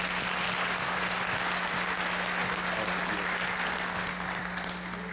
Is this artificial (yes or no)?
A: no